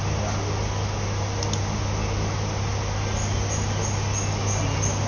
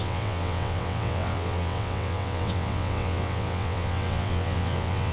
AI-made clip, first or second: second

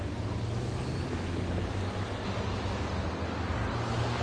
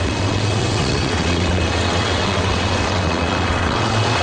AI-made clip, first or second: second